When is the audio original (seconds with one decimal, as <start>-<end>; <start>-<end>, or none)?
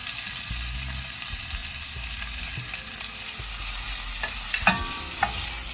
0.0-5.7